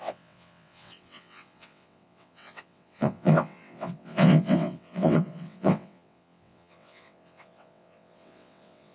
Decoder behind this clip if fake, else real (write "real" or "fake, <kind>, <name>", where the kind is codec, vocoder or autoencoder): fake, vocoder, WaveNeXt